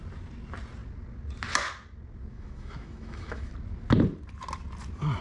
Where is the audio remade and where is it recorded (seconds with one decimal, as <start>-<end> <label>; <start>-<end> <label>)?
0.0-2.3 recorded; 2.3-3.5 remade; 3.5-5.2 recorded